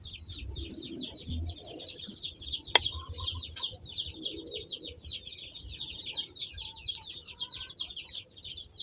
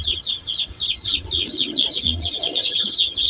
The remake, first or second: second